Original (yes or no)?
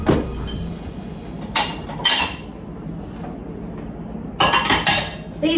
yes